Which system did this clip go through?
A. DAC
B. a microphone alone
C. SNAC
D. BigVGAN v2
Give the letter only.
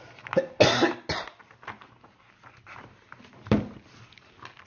B